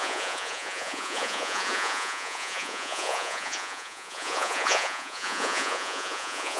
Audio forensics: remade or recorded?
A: remade